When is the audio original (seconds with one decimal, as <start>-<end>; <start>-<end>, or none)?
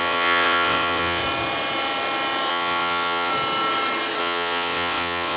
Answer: 1.2-2.5; 3.3-4.2